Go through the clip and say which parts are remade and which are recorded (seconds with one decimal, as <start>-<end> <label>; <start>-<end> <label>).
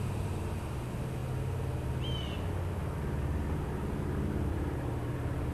0.0-1.2 remade; 1.2-4.5 recorded; 4.5-5.5 remade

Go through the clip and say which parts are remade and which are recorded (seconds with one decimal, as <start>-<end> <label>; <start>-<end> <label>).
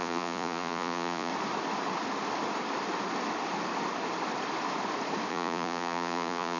0.0-1.3 remade; 1.3-5.3 recorded; 5.3-6.6 remade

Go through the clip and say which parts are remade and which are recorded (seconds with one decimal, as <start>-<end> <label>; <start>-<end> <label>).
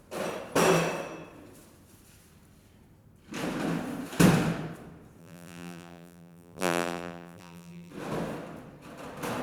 0.0-5.2 recorded; 5.2-7.9 remade; 7.9-9.4 recorded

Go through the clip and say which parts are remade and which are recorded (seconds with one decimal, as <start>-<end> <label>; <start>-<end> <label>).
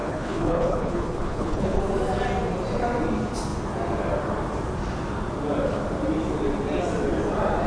0.0-1.8 remade; 1.8-7.7 recorded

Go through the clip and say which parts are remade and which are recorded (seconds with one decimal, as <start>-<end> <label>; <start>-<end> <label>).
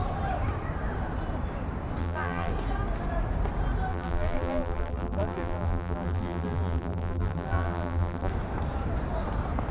0.0-2.0 recorded; 2.0-2.5 remade; 2.5-3.9 recorded; 3.9-8.3 remade; 8.3-9.7 recorded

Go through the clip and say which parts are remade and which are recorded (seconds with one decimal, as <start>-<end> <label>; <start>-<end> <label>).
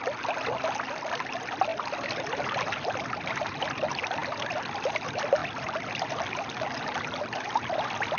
0.0-8.2 recorded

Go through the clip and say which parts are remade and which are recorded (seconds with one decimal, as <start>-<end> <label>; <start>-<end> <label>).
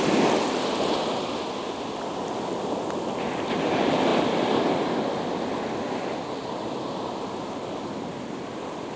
0.0-9.0 recorded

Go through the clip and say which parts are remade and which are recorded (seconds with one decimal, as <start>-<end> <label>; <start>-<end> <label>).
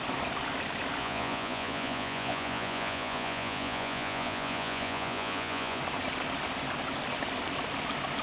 0.0-1.0 recorded; 1.0-5.8 remade; 5.8-8.2 recorded